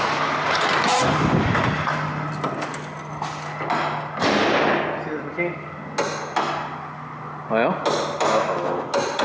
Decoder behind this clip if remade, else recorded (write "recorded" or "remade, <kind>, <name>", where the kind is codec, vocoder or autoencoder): recorded